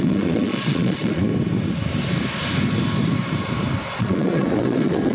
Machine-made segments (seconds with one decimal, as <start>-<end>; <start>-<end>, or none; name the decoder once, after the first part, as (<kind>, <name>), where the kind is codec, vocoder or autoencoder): 0.0-1.3 (vocoder, Vocos); 4.0-5.1